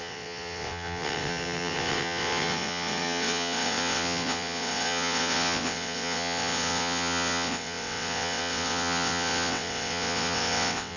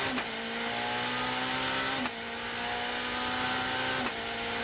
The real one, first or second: second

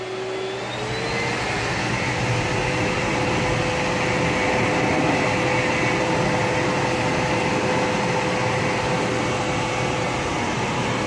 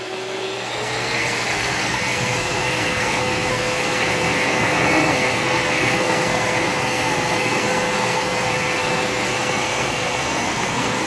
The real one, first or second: first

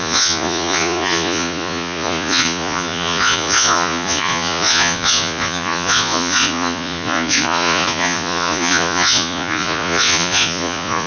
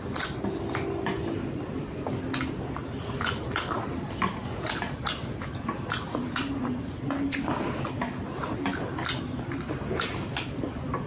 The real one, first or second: second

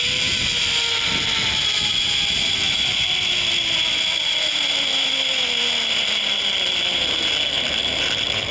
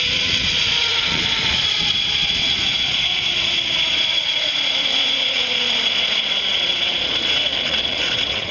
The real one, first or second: first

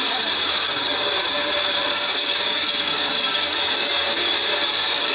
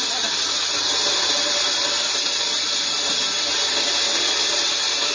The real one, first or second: second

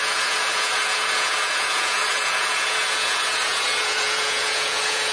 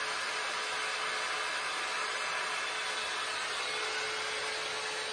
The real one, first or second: second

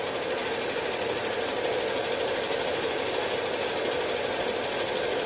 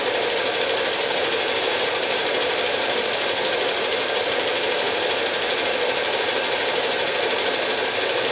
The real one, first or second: first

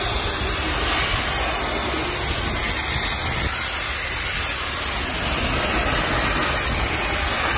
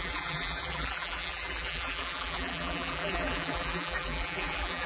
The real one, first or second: first